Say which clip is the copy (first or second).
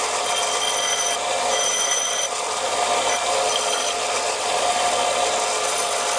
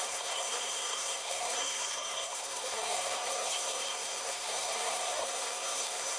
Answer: second